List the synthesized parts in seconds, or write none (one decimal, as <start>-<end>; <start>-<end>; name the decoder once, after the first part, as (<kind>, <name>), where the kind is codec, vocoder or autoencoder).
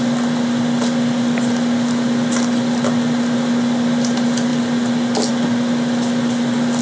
none